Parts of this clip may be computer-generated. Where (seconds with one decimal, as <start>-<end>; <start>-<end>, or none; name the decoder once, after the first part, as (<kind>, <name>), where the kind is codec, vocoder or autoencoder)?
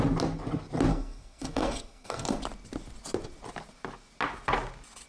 0.9-2.4 (codec, SNAC)